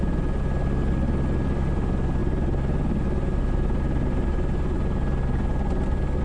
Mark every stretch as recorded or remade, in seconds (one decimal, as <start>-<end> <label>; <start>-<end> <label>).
0.0-6.2 recorded